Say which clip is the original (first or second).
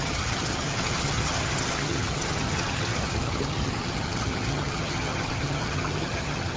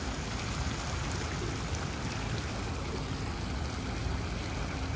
second